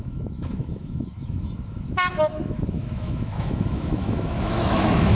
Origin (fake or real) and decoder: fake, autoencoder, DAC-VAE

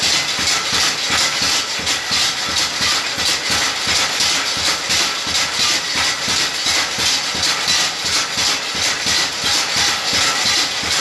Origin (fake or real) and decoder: real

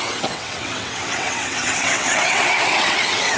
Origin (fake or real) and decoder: fake, vocoder, WaveNeXt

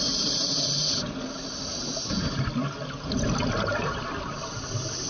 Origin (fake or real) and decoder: real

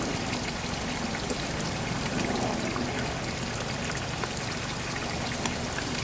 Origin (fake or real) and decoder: real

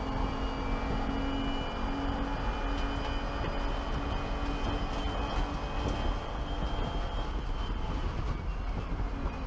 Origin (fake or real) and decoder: real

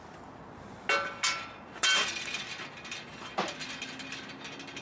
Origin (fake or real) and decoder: real